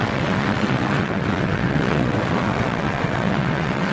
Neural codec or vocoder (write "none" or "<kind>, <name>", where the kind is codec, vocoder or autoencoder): vocoder, WaveNeXt